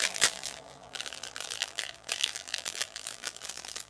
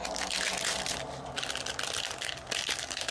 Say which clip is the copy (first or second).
first